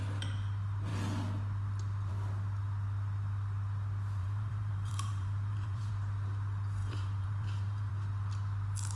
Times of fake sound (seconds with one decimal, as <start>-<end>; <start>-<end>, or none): 4.2-5.9; 6.8-7.9